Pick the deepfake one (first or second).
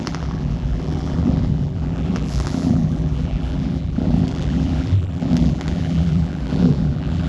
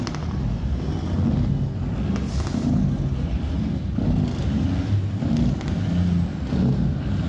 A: first